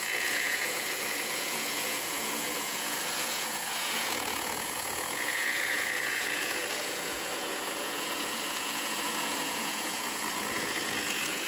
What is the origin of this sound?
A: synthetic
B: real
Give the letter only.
A